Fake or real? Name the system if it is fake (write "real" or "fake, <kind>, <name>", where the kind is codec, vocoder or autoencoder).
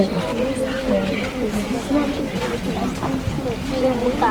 real